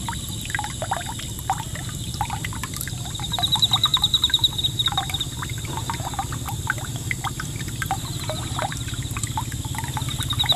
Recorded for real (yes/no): yes